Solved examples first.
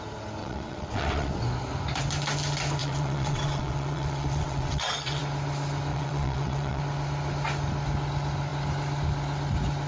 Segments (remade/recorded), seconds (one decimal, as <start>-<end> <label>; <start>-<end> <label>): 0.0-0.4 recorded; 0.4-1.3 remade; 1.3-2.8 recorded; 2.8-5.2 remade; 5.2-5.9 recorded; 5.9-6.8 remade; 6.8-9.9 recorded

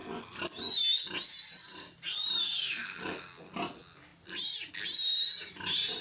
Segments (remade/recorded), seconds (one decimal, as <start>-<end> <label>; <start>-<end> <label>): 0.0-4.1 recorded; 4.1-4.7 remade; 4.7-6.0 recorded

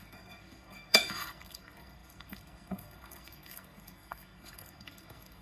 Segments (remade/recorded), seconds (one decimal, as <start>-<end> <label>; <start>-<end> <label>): 0.0-5.4 remade

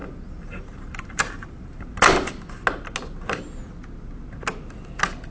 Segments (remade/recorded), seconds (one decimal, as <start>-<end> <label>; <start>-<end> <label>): 0.0-1.9 remade; 1.9-5.3 recorded